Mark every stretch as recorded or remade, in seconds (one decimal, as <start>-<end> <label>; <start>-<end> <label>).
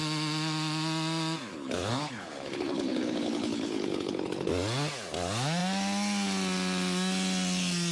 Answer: 0.0-1.5 recorded; 1.5-4.5 remade; 4.5-7.9 recorded